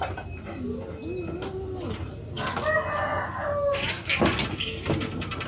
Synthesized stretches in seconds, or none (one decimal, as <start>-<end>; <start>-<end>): none